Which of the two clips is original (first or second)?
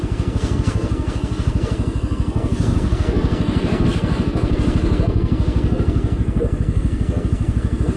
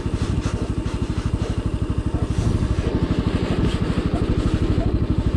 second